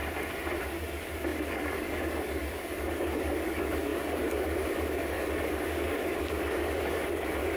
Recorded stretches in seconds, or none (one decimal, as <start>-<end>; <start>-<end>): 0.0-0.6